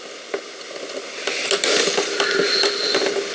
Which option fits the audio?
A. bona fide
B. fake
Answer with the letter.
A